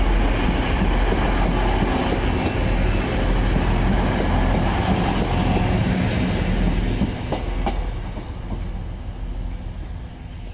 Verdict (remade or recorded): recorded